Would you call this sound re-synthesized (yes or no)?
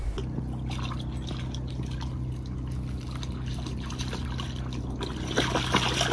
no